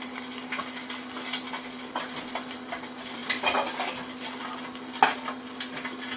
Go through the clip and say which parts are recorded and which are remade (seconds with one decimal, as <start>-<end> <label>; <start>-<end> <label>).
0.0-6.2 recorded